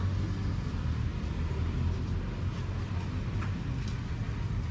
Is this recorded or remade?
recorded